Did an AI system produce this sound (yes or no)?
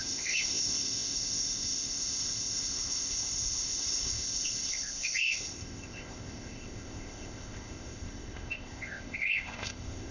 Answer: yes